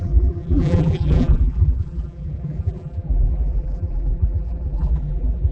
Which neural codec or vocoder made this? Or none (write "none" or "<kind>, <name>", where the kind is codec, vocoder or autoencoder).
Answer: vocoder, BigVGAN v2